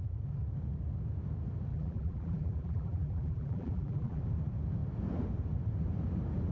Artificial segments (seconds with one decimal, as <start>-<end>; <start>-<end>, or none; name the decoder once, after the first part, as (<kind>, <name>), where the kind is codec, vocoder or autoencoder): 1.7-4.2 (vocoder, BigVGAN v2)